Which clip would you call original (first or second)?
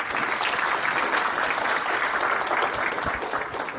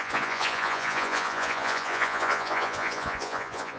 first